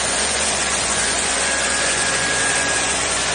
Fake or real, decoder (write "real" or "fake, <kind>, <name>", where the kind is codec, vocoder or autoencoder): fake, vocoder, Vocos